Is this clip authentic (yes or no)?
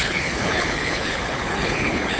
no